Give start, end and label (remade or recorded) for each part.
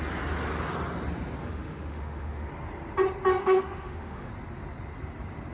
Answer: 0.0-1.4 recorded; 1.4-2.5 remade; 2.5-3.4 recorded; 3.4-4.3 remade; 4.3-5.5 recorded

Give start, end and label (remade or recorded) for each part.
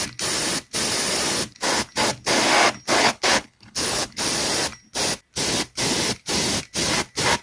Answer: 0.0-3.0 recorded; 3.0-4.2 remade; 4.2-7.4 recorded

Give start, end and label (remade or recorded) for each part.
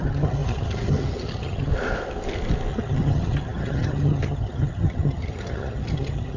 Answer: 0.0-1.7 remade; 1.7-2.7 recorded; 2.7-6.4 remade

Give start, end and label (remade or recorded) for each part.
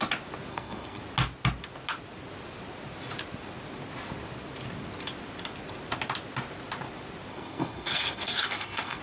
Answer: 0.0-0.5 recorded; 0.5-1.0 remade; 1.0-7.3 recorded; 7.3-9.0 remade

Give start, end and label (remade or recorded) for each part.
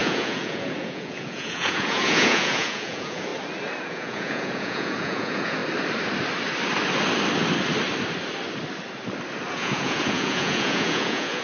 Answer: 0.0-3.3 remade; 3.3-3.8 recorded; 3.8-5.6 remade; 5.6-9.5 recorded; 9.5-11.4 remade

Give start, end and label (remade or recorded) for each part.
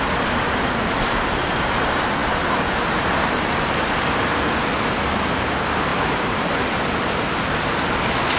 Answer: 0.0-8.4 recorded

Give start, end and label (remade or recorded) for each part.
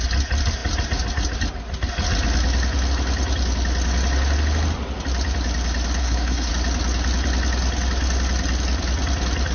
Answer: 0.0-6.0 recorded; 6.0-6.5 remade; 6.5-9.5 recorded